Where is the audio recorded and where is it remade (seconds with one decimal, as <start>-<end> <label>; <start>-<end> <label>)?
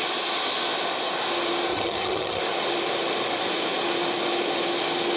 0.0-1.7 recorded; 1.7-2.4 remade; 2.4-5.2 recorded